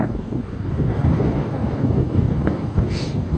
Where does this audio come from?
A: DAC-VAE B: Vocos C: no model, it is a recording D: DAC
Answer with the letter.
D